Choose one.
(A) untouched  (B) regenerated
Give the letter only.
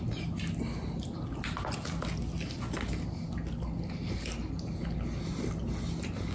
A